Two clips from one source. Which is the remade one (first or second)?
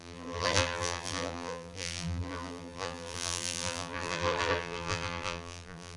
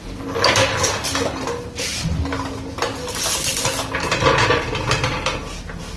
first